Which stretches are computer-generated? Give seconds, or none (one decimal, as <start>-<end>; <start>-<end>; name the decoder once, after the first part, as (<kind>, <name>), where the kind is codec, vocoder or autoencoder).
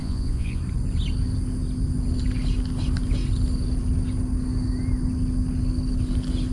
0.0-0.6 (vocoder, Vocos)